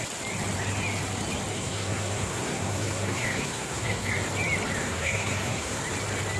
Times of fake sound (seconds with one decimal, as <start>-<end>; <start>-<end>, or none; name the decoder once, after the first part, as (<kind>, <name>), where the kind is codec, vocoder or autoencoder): 1.5-4.1 (codec, SNAC); 4.8-5.8